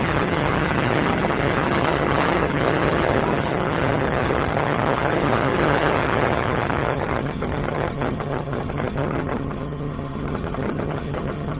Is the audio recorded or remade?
remade